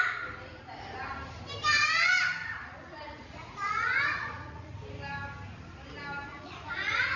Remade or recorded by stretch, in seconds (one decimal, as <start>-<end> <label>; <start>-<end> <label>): 0.0-2.6 recorded; 2.6-4.7 remade; 4.7-6.3 recorded; 6.3-7.2 remade